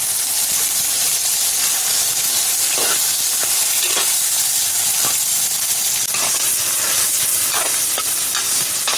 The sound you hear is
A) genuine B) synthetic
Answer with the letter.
A